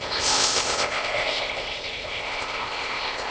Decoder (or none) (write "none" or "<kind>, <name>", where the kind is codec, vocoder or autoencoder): codec, ZipCodec